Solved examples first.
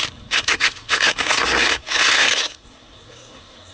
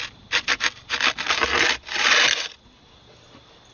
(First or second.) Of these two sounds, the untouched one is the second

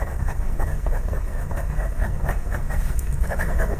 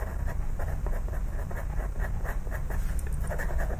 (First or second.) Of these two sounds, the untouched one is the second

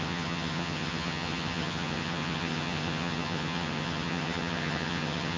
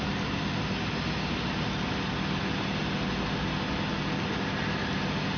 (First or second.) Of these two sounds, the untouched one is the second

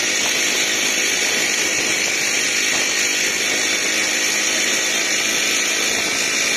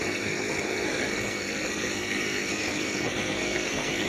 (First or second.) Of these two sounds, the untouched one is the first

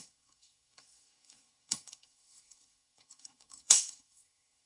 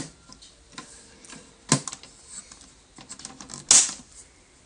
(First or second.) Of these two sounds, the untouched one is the second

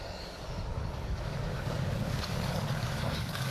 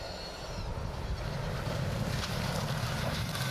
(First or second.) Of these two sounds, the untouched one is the second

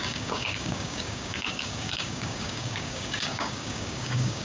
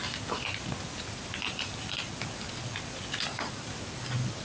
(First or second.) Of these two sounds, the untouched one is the second